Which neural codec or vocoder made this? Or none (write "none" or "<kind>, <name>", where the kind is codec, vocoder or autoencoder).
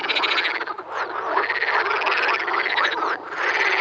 none